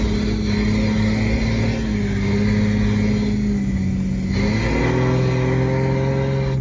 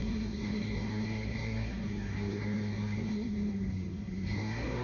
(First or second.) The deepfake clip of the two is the second